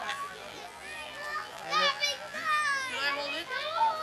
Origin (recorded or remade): remade